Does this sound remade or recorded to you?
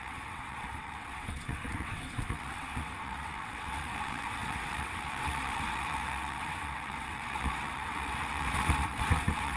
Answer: remade